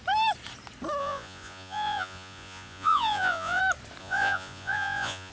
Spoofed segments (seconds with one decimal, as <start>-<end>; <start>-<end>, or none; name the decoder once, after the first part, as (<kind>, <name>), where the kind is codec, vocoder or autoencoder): 1.0-3.6 (vocoder, Vocos); 4.0-5.3